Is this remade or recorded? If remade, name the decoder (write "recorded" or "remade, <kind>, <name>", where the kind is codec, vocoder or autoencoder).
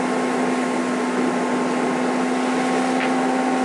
recorded